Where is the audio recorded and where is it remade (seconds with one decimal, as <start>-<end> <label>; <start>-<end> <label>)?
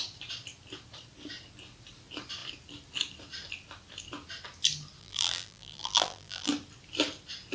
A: 0.0-5.0 recorded; 5.0-6.5 remade; 6.5-7.5 recorded